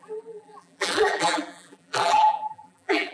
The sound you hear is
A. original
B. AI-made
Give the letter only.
B